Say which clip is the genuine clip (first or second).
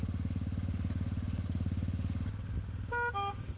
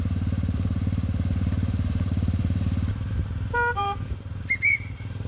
first